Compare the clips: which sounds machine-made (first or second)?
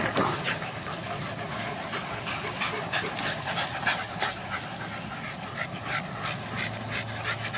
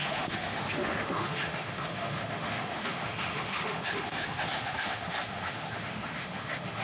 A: second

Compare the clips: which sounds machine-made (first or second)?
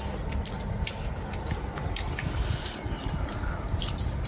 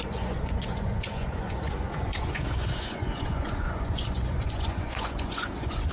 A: second